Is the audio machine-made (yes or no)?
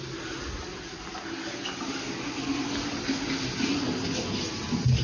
no